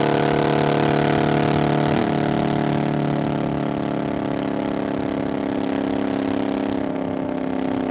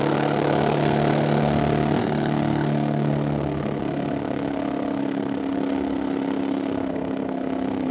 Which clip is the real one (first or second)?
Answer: first